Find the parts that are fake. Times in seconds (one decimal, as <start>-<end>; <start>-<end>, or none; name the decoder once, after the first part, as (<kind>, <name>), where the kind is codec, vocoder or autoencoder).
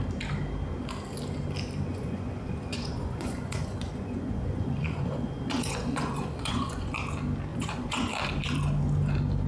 1.9-6.9 (vocoder, Vocos); 7.5-8.1